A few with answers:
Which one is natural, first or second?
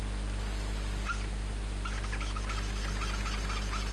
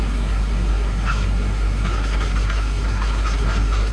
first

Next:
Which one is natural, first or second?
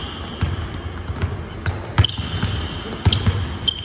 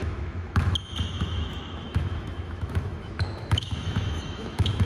first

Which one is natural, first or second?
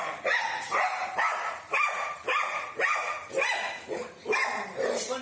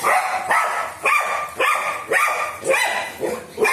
second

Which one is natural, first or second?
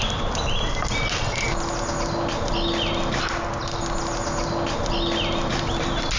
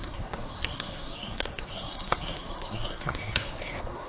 first